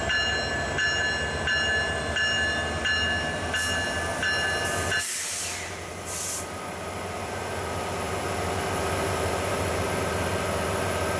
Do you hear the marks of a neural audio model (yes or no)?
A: no